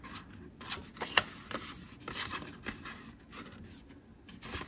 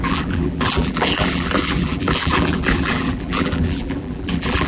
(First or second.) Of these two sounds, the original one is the first